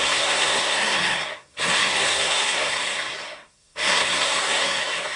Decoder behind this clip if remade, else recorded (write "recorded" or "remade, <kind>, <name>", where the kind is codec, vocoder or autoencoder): remade, codec, SNAC